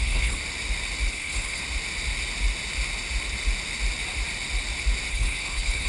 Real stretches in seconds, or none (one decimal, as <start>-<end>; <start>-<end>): 0.4-1.1; 1.6-5.1